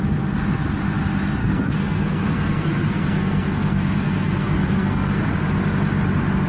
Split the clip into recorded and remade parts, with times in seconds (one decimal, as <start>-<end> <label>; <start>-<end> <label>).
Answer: 0.0-1.4 recorded; 1.4-5.3 remade; 5.3-6.5 recorded